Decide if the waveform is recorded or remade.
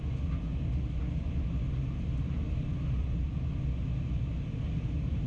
recorded